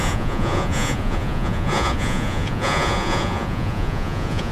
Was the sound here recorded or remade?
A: remade